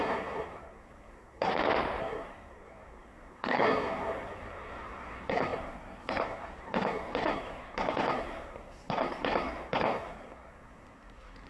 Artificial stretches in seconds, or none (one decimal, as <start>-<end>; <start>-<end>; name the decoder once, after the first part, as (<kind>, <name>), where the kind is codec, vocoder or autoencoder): 0.0-1.5 (codec, SNAC); 2.0-11.5